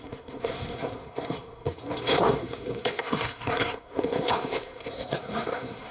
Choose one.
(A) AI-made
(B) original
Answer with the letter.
A